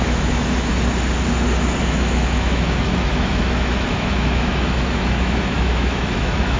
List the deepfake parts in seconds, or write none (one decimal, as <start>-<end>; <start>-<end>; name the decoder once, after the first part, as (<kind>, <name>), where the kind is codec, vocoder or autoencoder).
0.0-0.7 (autoencoder, DAC-VAE); 1.8-6.6